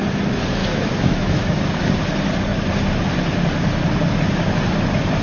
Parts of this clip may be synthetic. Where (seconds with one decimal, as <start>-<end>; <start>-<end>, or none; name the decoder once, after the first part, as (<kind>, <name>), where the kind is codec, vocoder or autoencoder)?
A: 0.6-1.9 (autoencoder, DAC-VAE)